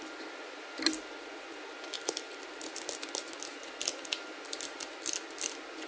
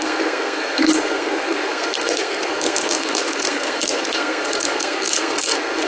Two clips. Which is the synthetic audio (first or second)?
second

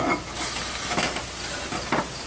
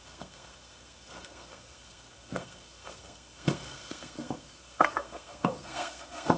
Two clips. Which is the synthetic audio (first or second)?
second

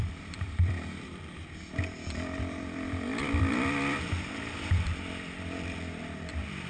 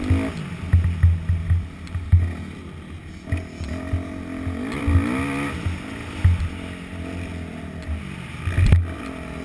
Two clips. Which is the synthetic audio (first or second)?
first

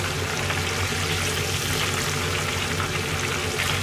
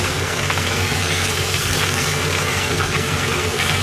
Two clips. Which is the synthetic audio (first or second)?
second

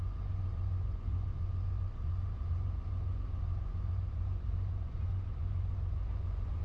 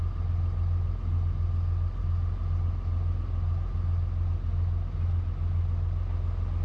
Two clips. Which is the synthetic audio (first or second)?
first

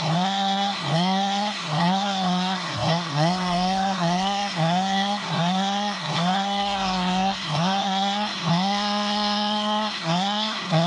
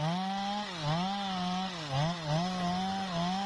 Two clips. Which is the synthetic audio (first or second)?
first